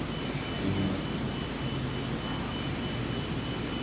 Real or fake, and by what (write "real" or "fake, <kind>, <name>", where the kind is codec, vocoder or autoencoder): real